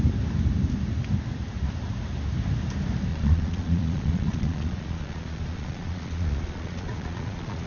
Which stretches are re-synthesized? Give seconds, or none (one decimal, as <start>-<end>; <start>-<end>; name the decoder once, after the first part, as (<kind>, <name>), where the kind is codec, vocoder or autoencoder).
3.1-7.7 (vocoder, Vocos)